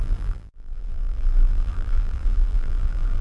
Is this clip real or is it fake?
fake